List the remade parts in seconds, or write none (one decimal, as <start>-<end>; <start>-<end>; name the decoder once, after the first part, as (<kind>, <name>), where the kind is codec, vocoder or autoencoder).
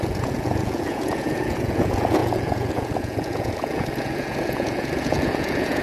0.0-5.8 (vocoder, Vocos)